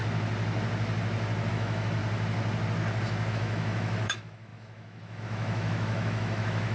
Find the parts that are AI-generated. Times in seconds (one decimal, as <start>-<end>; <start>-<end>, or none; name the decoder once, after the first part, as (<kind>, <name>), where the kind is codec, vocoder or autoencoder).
1.5-2.0 (autoencoder, DAC-VAE); 3.3-6.7